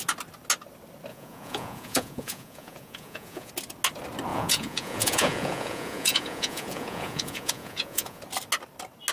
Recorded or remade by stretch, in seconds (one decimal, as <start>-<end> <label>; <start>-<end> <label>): 0.0-1.1 recorded; 1.1-3.5 remade; 3.5-4.3 recorded; 4.3-8.2 remade; 8.2-9.1 recorded